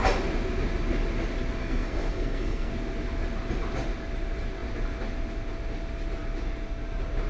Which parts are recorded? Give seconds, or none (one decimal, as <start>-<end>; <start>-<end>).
0.0-1.6; 2.7-7.3